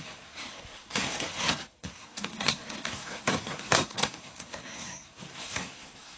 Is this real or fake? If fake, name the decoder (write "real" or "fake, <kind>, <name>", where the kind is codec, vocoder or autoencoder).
fake, codec, SNAC